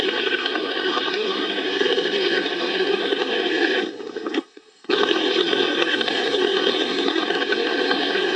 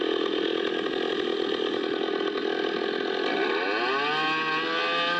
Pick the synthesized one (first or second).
first